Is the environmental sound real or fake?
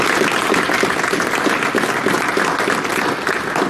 real